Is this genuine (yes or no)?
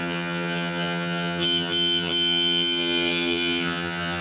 no